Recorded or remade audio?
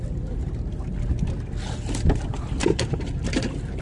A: recorded